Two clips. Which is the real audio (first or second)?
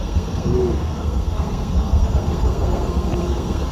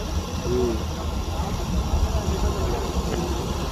second